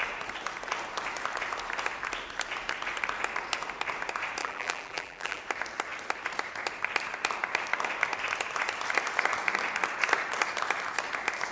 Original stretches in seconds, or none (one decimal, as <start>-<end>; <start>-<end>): 0.0-4.4; 5.4-11.5